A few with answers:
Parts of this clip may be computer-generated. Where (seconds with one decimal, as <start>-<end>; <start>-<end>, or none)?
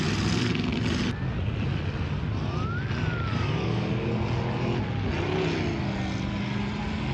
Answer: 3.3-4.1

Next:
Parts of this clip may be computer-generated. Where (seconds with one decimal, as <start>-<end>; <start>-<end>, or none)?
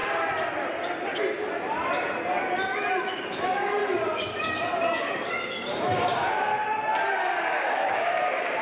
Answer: 3.0-3.8; 5.0-6.5; 7.1-8.6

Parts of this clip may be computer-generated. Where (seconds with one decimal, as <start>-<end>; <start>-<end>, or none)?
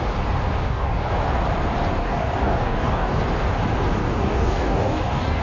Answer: 0.6-1.1; 2.0-3.2; 4.0-5.4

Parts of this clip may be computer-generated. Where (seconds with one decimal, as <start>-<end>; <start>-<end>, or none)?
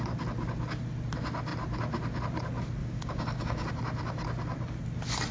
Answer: 2.8-3.7